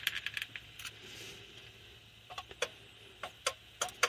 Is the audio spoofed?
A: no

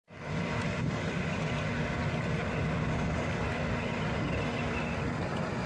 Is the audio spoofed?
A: no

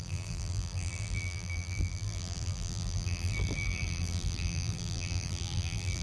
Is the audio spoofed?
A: yes